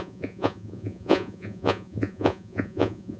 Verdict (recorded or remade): remade